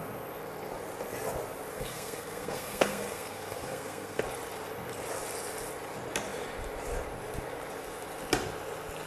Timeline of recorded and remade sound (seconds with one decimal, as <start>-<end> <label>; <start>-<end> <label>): 0.0-1.7 recorded; 1.7-4.2 remade; 4.2-9.1 recorded